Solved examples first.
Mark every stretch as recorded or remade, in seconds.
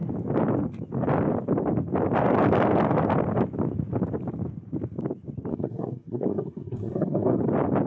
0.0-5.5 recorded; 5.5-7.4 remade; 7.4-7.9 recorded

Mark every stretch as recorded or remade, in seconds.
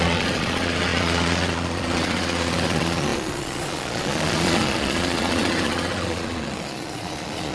0.0-7.5 remade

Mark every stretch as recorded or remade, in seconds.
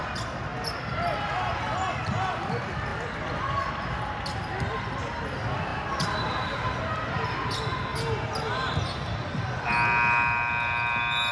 0.0-2.9 recorded; 2.9-4.2 remade; 4.2-11.3 recorded